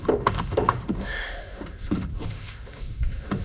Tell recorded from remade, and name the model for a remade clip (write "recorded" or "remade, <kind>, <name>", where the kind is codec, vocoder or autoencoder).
remade, autoencoder, DAC-VAE